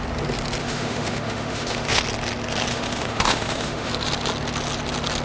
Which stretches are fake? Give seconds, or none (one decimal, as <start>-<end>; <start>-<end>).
0.6-2.0; 2.7-3.9